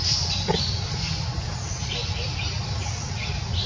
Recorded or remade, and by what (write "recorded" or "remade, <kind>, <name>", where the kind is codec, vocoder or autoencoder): recorded